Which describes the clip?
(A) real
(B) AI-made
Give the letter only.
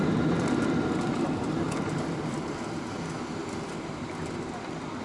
B